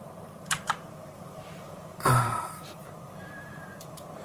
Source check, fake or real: fake